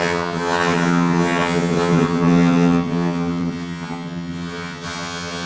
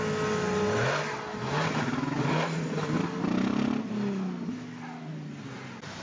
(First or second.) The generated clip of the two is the first